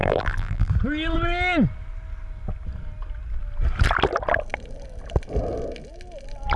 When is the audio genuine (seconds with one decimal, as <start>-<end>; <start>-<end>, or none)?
0.7-6.6